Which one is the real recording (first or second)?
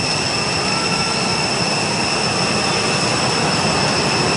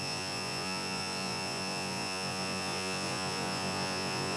first